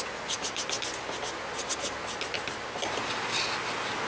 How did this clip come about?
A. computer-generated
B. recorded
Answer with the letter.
B